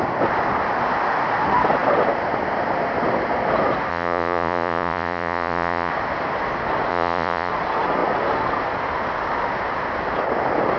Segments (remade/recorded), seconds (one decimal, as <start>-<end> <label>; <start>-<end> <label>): 0.0-3.9 recorded; 3.9-5.9 remade; 5.9-6.9 recorded; 6.9-7.5 remade; 7.5-10.8 recorded